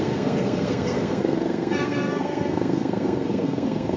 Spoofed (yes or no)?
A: yes